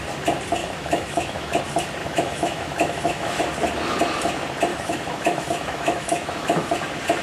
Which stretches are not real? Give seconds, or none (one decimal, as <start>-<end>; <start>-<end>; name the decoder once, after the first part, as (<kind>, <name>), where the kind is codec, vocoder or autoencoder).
0.6-1.6 (autoencoder, DAC-VAE); 2.0-3.4; 4.7-6.7